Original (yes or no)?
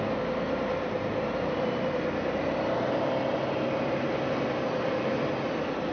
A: yes